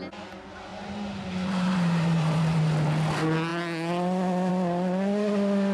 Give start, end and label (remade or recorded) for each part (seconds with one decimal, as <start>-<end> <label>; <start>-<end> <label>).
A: 0.0-0.7 recorded; 0.7-2.6 remade; 2.6-5.7 recorded